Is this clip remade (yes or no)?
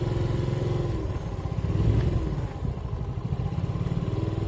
no